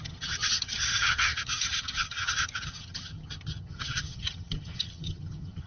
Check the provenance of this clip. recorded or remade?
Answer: remade